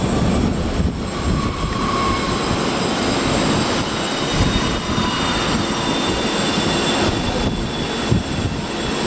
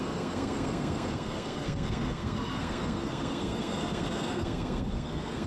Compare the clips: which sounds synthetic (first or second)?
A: second